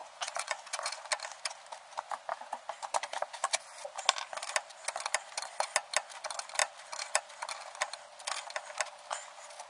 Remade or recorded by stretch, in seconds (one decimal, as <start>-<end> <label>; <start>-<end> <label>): 0.0-1.0 remade; 1.0-9.7 recorded

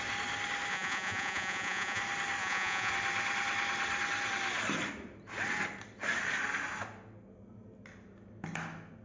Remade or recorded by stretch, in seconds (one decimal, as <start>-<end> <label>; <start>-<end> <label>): 0.0-0.7 recorded; 0.7-2.0 remade; 2.0-2.4 recorded; 2.4-2.9 remade; 2.9-9.0 recorded

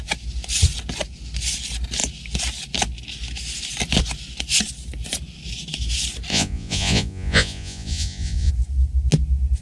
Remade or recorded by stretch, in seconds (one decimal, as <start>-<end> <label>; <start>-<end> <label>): 0.0-6.3 recorded; 6.3-8.5 remade; 8.5-9.6 recorded

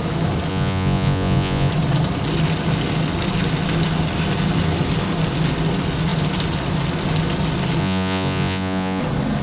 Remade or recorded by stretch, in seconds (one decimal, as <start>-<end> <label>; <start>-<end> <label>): 0.0-0.5 recorded; 0.5-1.7 remade; 1.7-7.8 recorded; 7.8-9.0 remade; 9.0-9.4 recorded